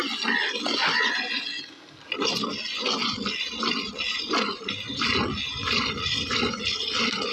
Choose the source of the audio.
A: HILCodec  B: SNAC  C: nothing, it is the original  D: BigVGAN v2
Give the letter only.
C